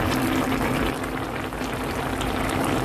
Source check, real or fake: real